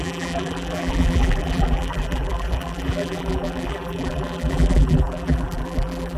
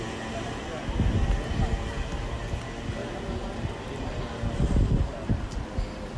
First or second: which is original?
second